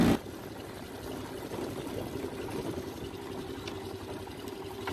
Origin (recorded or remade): recorded